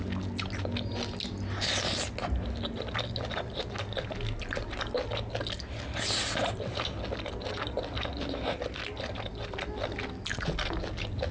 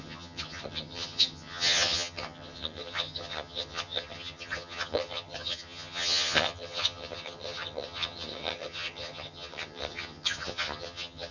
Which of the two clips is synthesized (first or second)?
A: second